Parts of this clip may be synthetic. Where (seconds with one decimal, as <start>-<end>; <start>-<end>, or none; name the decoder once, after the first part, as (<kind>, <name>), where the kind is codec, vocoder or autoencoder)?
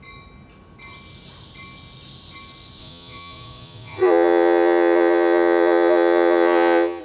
2.8-7.0 (vocoder, Vocos)